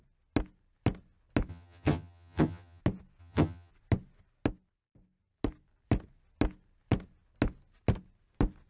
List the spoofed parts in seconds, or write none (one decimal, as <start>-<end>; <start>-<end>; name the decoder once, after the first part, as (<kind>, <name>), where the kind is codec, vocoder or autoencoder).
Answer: 1.5-2.8 (vocoder, HiFi-GAN); 3.2-3.7